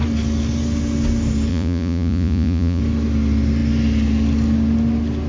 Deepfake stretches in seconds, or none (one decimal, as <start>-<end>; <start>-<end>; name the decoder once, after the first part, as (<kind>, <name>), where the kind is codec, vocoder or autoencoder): 1.5-2.8 (vocoder, Vocos)